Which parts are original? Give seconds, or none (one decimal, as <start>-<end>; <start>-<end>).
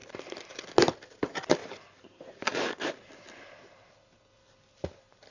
0.0-1.6; 2.9-5.3